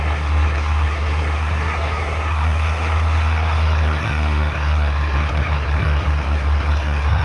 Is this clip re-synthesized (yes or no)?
yes